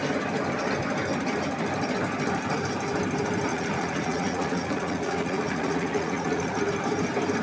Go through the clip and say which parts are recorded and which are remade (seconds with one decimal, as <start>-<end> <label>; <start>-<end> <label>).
0.0-3.5 recorded; 3.5-6.6 remade; 6.6-7.4 recorded